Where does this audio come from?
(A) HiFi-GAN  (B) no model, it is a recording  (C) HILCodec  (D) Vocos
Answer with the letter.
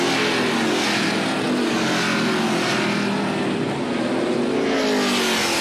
B